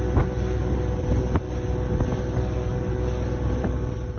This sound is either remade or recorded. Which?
recorded